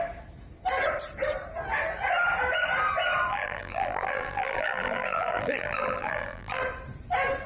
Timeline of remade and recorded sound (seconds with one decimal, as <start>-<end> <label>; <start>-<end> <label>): 0.0-3.3 recorded; 3.3-6.6 remade; 6.6-7.5 recorded